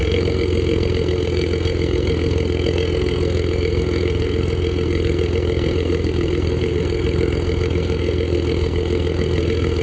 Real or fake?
fake